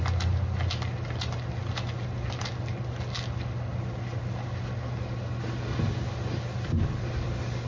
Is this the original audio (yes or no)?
yes